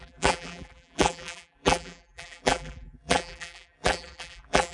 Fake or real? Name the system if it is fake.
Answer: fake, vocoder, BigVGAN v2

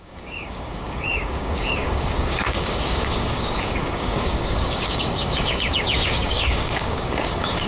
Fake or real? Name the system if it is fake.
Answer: fake, codec, DAC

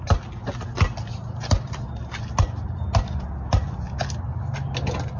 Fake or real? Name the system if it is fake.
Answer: real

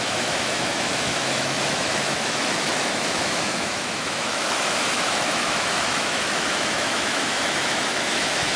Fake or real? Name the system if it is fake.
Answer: fake, autoencoder, DAC-VAE